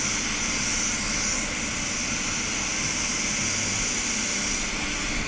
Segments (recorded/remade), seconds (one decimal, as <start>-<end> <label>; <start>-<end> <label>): 0.0-5.3 recorded

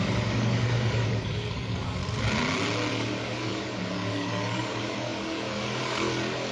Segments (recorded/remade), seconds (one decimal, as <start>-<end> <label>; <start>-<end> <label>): 0.0-2.0 remade; 2.0-2.9 recorded; 2.9-6.5 remade

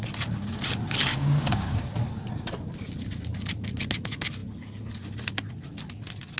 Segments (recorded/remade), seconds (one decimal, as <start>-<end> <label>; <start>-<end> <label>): 0.0-1.1 recorded; 1.1-1.8 remade; 1.8-6.4 recorded